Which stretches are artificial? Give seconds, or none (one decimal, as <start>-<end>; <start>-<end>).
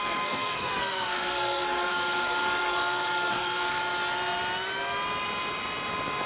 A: 0.0-3.8